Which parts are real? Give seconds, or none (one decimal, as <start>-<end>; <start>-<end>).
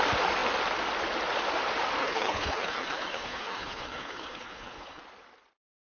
0.0-2.0; 5.0-5.9